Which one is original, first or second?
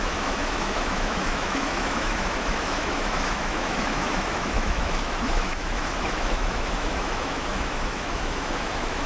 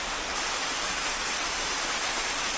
second